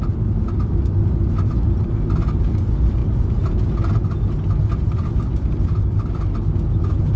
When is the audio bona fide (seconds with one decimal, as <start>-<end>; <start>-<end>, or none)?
0.0-7.2